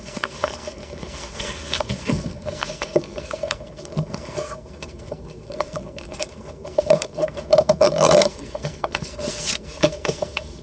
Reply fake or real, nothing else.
fake